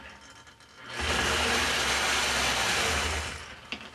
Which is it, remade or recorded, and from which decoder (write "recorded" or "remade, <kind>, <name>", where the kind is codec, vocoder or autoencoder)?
recorded